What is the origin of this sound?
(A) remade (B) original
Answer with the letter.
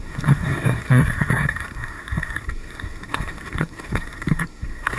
A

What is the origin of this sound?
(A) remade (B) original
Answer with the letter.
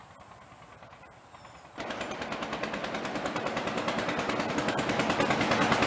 B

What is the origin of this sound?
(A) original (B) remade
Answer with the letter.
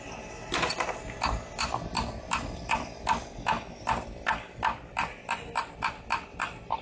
A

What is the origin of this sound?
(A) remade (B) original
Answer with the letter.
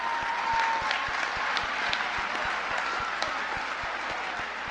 B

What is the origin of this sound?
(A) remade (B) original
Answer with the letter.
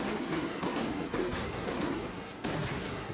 A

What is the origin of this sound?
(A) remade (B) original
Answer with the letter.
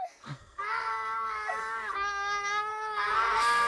A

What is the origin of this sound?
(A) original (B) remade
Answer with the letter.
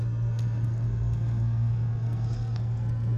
B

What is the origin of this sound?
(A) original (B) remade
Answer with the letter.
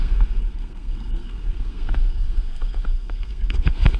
B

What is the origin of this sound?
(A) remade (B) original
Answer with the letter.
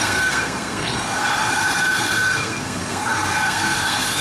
A